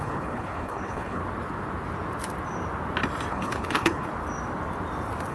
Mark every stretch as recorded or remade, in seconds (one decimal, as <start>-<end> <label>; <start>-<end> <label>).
0.0-1.2 remade; 1.2-3.3 recorded; 3.3-4.1 remade; 4.1-5.3 recorded